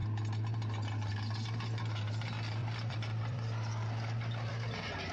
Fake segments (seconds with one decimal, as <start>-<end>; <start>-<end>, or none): 2.6-4.5